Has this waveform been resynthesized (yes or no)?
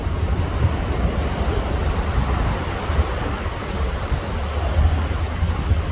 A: no